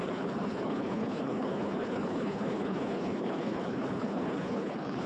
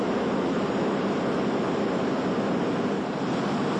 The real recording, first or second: second